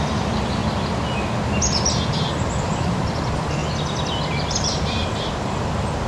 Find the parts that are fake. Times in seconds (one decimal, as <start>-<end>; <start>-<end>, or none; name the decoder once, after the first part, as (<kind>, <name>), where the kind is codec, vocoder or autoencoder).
0.0-0.6 (vocoder, BigVGAN v2); 2.6-3.6; 4.2-6.1

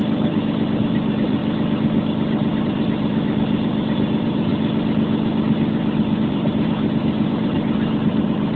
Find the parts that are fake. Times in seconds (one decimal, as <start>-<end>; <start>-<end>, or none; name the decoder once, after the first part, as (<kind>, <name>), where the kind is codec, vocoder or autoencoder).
0.8-1.4 (vocoder, BigVGAN v2); 2.6-4.5; 6.3-8.6